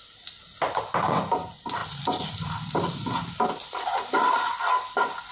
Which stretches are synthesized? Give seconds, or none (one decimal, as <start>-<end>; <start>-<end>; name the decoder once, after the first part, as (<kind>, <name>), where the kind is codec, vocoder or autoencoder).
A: none